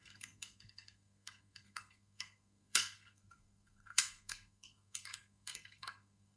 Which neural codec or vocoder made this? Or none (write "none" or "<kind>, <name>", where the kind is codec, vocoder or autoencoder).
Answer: codec, SNAC